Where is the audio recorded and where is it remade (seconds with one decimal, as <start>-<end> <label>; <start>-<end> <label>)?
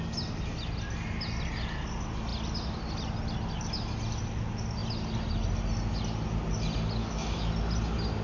0.0-7.0 recorded; 7.0-7.5 remade; 7.5-8.2 recorded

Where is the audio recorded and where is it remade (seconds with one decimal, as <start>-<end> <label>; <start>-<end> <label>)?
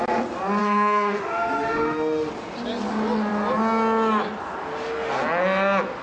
0.0-0.6 recorded; 0.6-2.3 remade; 2.3-6.0 recorded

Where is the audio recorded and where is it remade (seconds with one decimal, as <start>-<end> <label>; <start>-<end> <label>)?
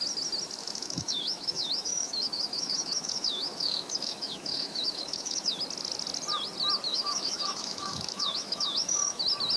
0.0-0.6 recorded; 0.6-5.6 remade; 5.6-6.9 recorded; 6.9-9.2 remade; 9.2-9.6 recorded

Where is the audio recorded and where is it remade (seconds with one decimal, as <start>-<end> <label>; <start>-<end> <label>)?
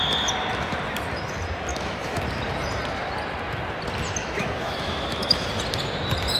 0.0-1.7 recorded; 1.7-2.2 remade; 2.2-4.2 recorded; 4.2-5.5 remade; 5.5-6.4 recorded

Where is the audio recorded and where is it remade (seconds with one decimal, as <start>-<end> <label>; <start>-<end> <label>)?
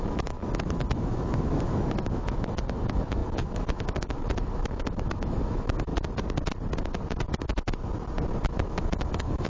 0.0-5.9 remade; 5.9-8.4 recorded; 8.4-9.5 remade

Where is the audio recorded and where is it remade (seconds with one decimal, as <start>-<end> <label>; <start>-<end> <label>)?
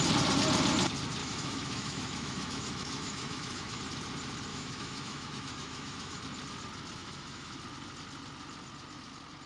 0.0-1.2 recorded; 1.2-3.8 remade; 3.8-4.5 recorded; 4.5-6.2 remade; 6.2-7.0 recorded; 7.0-7.6 remade; 7.6-9.5 recorded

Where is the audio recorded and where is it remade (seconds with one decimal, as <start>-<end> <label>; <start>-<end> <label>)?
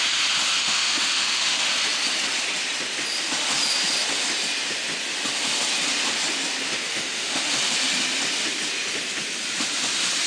0.0-0.6 recorded; 0.6-1.7 remade; 1.7-6.9 recorded; 6.9-7.5 remade; 7.5-10.3 recorded